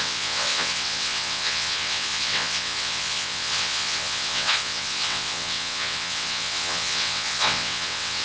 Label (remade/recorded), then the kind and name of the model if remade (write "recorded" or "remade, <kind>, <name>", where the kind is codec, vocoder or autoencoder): remade, vocoder, WaveNeXt